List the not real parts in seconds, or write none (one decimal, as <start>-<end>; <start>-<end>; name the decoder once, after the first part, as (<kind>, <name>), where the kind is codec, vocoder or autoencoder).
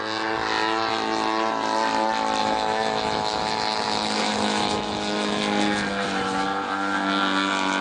2.4-5.4 (autoencoder, DAC-VAE)